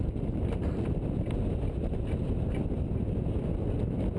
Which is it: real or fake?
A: real